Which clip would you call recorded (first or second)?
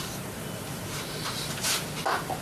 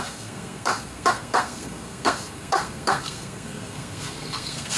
first